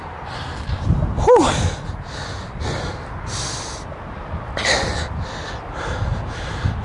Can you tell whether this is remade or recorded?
recorded